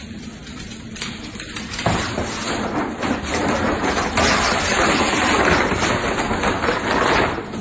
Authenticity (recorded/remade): recorded